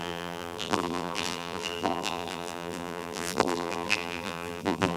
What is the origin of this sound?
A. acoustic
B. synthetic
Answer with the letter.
B